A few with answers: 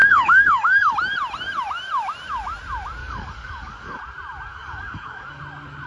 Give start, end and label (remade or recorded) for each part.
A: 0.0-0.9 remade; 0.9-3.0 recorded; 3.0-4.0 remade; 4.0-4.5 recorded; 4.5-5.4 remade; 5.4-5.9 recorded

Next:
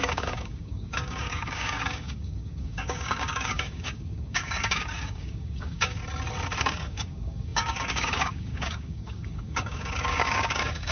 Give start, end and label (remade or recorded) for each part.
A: 0.0-6.0 remade; 6.0-6.6 recorded; 6.6-10.9 remade

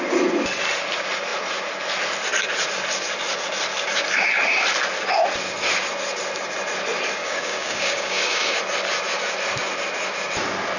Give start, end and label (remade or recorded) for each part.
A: 0.0-7.2 recorded; 7.2-8.6 remade; 8.6-10.8 recorded

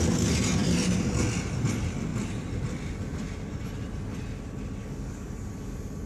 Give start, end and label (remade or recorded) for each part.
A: 0.0-4.8 recorded; 4.8-5.5 remade; 5.5-6.1 recorded